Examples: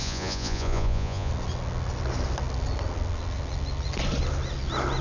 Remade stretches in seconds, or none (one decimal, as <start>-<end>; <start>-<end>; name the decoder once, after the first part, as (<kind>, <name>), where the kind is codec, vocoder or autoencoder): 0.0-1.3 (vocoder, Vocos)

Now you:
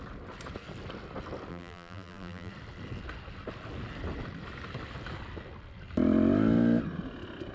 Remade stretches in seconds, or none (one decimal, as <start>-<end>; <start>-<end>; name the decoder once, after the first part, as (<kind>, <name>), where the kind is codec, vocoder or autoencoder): 1.5-2.5 (vocoder, BigVGAN v2)

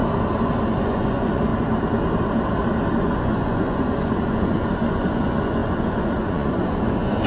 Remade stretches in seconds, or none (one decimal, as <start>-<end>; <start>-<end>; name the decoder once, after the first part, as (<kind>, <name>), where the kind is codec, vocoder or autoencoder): 0.8-1.5 (vocoder, Vocos); 3.0-7.3

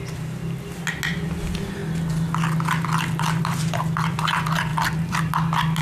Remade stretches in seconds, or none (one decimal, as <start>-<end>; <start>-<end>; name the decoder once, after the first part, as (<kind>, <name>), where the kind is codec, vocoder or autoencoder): 4.7-5.3 (vocoder, BigVGAN v2)

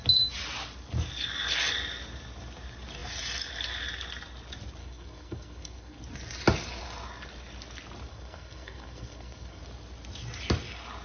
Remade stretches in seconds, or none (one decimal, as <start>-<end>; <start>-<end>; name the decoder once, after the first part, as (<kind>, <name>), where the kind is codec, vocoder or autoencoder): 4.8-6.0 (codec, SNAC); 8.1-9.6

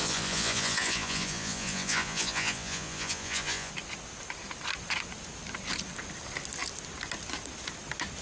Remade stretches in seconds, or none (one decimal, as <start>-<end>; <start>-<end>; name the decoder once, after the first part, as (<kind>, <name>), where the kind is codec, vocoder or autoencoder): 0.0-3.7 (vocoder, Vocos)

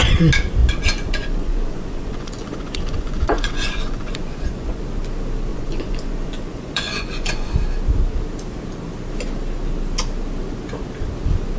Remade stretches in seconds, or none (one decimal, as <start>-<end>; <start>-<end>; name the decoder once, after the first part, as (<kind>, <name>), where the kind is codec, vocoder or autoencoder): 0.6-4.8 (vocoder, Vocos); 5.5-7.5

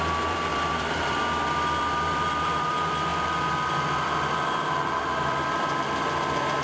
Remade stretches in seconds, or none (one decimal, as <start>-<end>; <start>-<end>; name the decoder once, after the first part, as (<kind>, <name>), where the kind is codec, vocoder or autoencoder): 0.0-3.1 (vocoder, BigVGAN v2); 3.7-6.6